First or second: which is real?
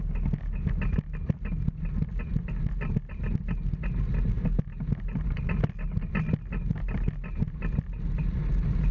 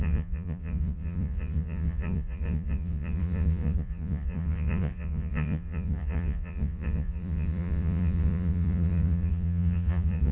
first